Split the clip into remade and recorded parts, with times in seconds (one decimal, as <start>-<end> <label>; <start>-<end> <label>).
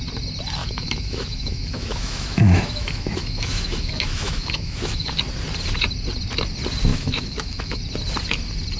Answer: 0.0-0.6 recorded; 0.6-5.1 remade; 5.1-6.9 recorded; 6.9-7.8 remade; 7.8-8.8 recorded